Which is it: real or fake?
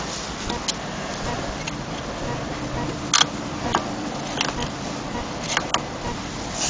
real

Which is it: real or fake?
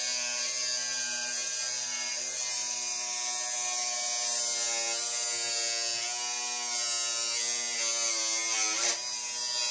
real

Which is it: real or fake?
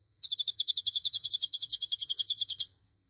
fake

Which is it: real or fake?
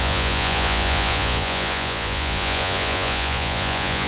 fake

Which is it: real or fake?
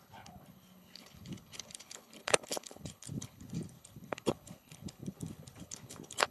fake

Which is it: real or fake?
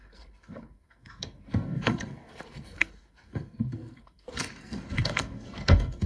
fake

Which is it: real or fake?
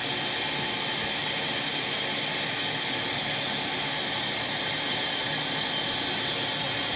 real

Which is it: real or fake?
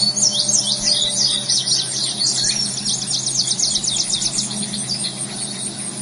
real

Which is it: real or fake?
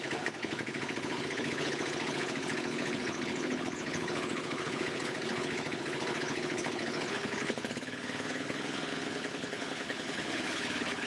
fake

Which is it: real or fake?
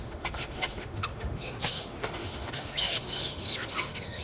fake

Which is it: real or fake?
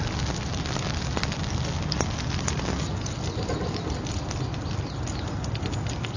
real